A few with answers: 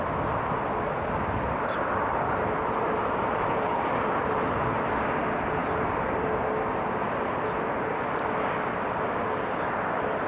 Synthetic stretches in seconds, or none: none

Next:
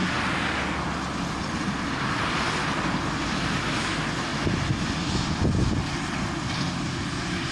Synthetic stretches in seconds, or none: none

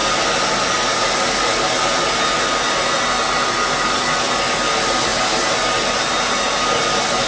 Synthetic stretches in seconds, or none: none

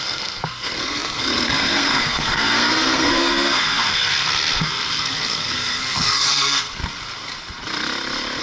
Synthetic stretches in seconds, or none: 0.0-6.8 (codec, SNAC)